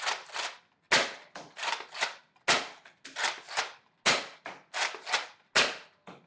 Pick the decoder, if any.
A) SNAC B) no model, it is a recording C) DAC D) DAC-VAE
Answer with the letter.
B